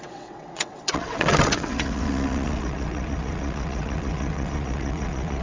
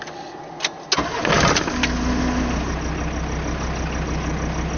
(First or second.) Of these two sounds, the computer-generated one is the first